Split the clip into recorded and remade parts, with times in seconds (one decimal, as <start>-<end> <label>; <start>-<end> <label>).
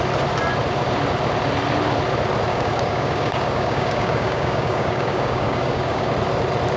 0.0-2.5 recorded; 2.5-6.1 remade; 6.1-6.8 recorded